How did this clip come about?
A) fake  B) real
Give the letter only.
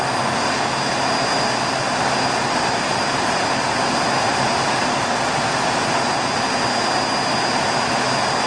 B